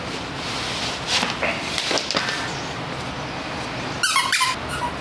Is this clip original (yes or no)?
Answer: yes